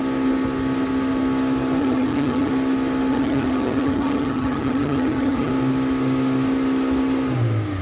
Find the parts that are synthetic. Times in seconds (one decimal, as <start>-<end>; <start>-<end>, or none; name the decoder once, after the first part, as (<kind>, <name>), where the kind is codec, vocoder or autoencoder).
1.8-2.5 (vocoder, HiFi-GAN); 3.1-5.5